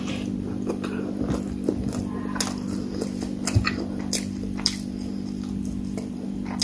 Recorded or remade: remade